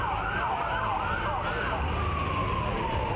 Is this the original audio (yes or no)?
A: yes